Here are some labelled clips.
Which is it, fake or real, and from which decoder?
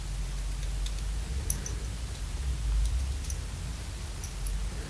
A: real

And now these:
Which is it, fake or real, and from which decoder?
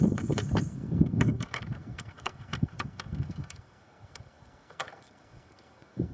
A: fake, codec, SNAC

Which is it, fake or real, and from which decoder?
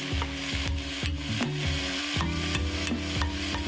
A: real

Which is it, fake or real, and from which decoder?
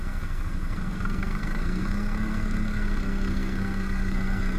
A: fake, codec, SNAC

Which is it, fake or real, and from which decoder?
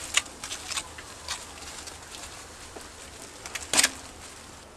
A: real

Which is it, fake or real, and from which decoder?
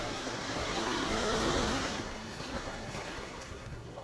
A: fake, codec, SNAC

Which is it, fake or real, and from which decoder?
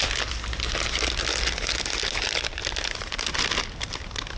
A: real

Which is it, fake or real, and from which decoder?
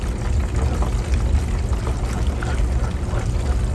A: real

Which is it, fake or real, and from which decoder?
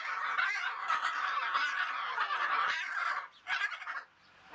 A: real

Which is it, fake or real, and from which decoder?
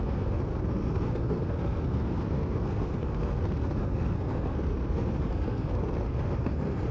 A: fake, codec, SNAC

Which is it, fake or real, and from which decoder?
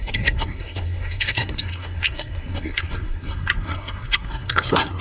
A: fake, codec, SNAC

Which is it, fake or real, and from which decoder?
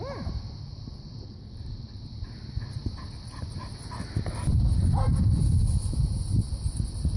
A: real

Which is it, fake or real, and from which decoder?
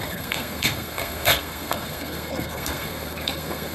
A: fake, codec, SNAC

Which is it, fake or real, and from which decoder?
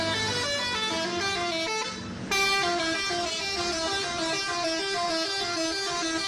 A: real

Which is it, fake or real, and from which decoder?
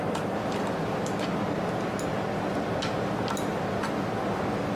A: real